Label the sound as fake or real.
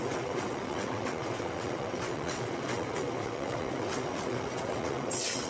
fake